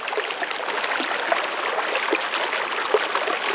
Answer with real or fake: real